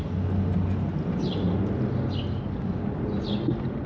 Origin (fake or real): real